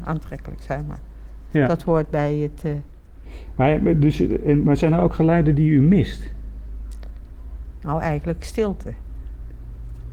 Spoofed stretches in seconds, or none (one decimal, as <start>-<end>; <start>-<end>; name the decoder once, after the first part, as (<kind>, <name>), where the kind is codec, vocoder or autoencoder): none